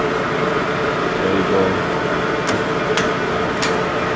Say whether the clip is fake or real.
real